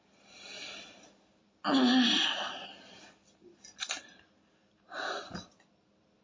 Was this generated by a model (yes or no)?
no